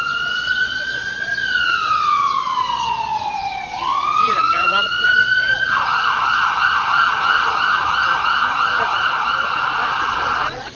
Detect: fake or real fake